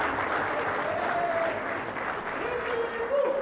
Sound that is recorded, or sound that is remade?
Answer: recorded